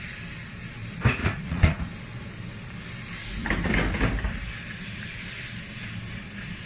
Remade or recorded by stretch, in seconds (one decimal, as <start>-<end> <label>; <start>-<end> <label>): 0.0-1.2 recorded; 1.2-1.8 remade; 1.8-6.7 recorded